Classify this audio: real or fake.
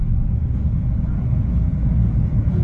fake